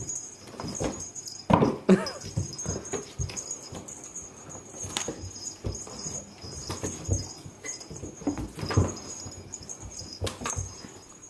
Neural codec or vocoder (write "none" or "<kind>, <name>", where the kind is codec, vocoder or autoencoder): none